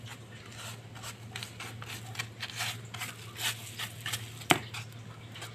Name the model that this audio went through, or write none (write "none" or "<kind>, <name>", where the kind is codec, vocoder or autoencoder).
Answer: none